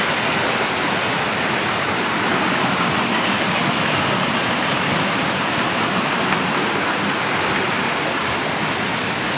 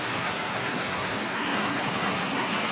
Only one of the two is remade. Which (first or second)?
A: second